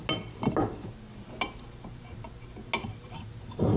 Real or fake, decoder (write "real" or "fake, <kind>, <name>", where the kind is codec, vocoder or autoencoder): real